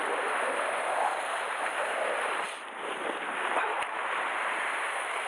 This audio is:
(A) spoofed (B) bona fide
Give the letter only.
B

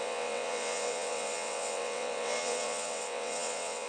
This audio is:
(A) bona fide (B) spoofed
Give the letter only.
B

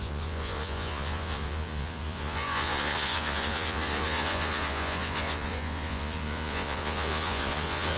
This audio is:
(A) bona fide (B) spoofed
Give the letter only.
B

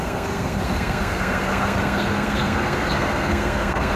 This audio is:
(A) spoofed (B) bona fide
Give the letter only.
A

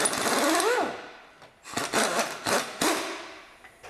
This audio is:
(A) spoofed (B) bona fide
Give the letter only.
B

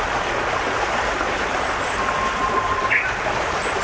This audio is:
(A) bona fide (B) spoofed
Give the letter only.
A